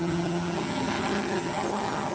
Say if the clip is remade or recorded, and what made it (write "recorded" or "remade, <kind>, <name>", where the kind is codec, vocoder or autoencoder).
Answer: remade, vocoder, HiFi-GAN